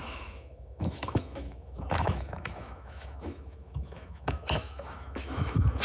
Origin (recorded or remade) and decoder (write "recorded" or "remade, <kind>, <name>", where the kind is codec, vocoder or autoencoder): remade, autoencoder, DAC-VAE